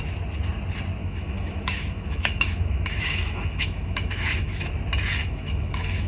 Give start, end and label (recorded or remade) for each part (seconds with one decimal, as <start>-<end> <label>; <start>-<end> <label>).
0.0-1.0 recorded; 1.0-4.7 remade; 4.7-5.2 recorded; 5.2-6.1 remade